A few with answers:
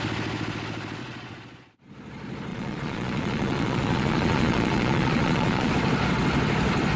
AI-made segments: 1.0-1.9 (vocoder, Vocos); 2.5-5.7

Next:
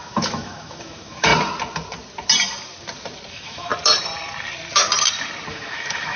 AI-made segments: 0.0-1.3 (autoencoder, DAC-VAE); 3.3-3.7; 5.5-6.2

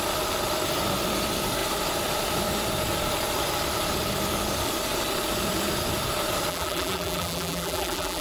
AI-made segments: 6.5-8.2 (vocoder, BigVGAN v2)